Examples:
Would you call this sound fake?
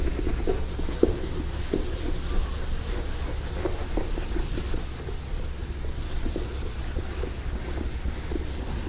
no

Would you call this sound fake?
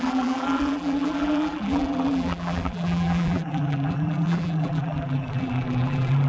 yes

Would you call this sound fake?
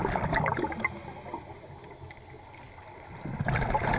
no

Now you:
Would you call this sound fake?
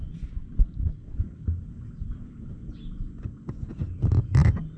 no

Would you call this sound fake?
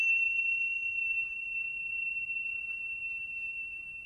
yes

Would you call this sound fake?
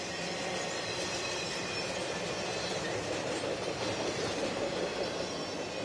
yes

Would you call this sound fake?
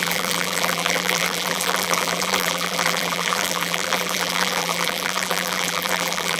yes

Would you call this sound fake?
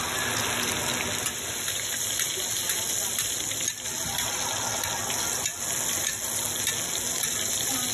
no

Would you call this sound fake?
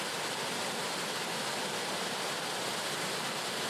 no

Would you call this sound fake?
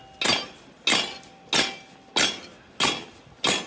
no